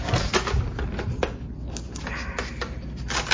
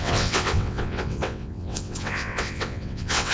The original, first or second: first